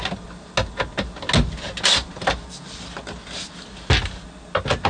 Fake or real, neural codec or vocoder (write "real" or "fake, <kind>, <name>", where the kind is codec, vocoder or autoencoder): real